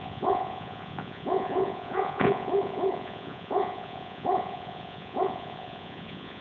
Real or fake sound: fake